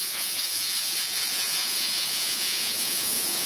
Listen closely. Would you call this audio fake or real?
fake